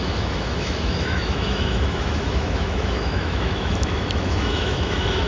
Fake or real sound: fake